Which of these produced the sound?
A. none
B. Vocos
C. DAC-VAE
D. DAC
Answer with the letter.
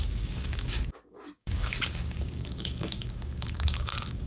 D